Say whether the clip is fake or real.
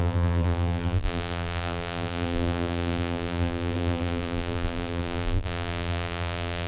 fake